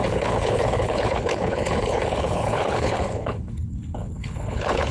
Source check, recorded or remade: remade